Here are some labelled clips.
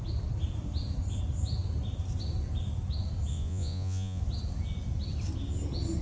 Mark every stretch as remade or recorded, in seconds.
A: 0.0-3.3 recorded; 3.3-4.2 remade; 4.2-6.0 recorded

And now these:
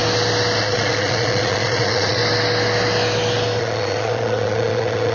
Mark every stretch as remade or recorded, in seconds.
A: 0.0-0.6 recorded; 0.6-2.2 remade; 2.2-3.6 recorded; 3.6-5.1 remade